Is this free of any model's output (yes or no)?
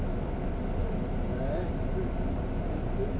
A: yes